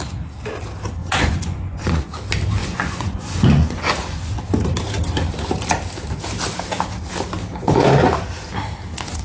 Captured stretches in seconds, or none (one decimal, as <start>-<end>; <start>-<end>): 0.0-1.0; 2.1-2.6; 4.4-7.5; 8.1-9.2